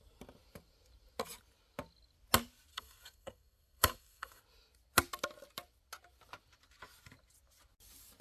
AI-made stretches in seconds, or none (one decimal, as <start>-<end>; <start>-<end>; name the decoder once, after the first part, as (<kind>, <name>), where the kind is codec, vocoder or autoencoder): 2.7-4.4 (codec, SNAC)

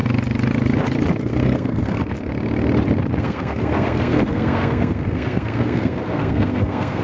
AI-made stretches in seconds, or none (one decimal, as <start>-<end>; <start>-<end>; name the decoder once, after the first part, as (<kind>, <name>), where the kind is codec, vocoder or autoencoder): 1.2-2.0 (codec, SNAC); 3.2-7.0

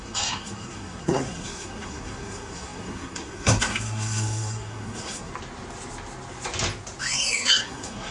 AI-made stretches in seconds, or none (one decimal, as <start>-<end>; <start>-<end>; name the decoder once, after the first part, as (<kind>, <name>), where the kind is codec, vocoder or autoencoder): 0.0-5.3 (codec, SNAC); 7.0-8.1

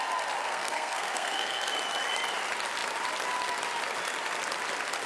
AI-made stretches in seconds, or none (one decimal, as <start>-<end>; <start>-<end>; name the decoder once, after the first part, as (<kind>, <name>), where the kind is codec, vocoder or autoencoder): 0.4-1.7 (codec, SNAC)

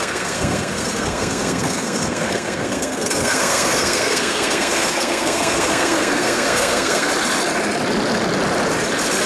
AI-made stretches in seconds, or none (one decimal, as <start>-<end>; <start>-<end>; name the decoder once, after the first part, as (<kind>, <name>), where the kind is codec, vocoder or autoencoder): 0.0-7.1 (codec, SNAC)